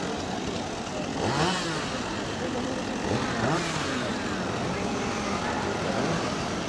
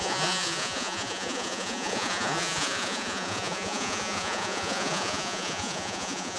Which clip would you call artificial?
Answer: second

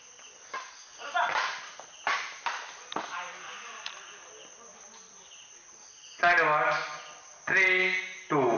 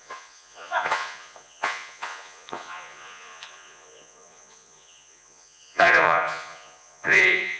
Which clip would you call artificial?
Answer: second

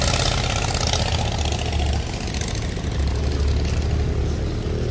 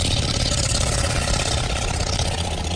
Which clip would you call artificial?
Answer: second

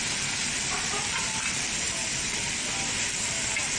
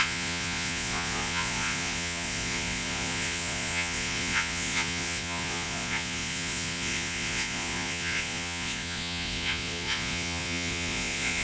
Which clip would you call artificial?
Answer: second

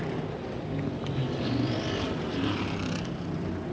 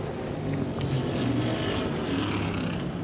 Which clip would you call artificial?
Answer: first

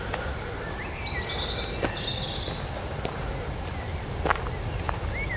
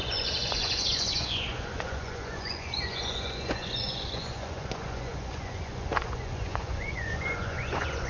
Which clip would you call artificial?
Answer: second